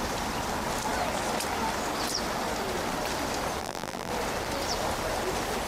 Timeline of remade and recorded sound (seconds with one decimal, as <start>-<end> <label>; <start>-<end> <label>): 0.0-3.6 recorded; 3.6-4.1 remade; 4.1-5.7 recorded

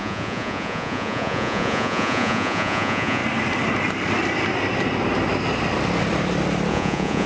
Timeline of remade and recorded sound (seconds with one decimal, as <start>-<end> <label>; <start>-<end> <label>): 0.0-3.2 remade; 3.2-6.7 recorded; 6.7-7.3 remade

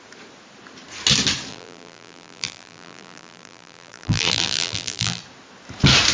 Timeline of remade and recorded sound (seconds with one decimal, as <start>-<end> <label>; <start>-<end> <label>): 0.0-1.5 recorded; 1.5-5.2 remade; 5.2-6.1 recorded

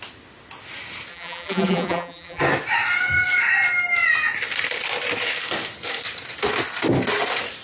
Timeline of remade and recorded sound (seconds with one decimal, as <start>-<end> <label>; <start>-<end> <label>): 0.0-1.1 recorded; 1.1-2.4 remade; 2.4-7.6 recorded